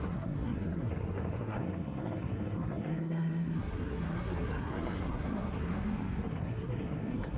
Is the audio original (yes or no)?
no